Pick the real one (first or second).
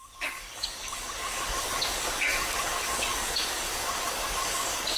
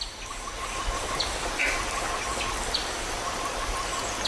second